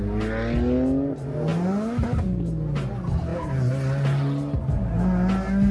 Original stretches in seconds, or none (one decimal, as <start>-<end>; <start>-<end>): 0.0-5.7